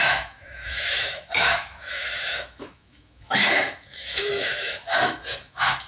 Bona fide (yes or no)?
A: no